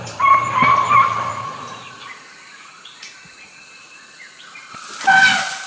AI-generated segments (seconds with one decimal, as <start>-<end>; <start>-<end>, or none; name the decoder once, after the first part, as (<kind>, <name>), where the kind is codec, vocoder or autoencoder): 1.3-4.7 (vocoder, Vocos)